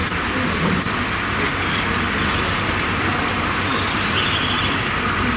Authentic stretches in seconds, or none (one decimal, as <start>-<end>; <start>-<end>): 0.0-5.4